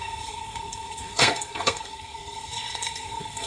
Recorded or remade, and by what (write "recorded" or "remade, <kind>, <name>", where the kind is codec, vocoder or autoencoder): remade, codec, SNAC